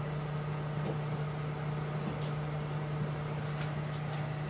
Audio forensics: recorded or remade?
recorded